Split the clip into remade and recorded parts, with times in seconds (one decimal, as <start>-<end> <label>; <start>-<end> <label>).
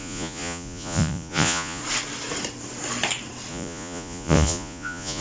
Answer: 0.0-1.8 remade; 1.8-3.5 recorded; 3.5-5.2 remade